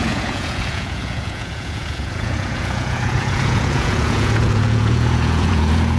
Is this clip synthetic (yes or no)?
yes